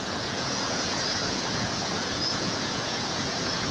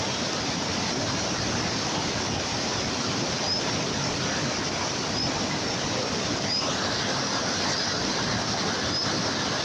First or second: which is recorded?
second